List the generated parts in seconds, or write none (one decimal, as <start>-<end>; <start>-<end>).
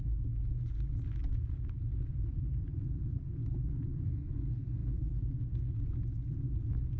1.2-3.3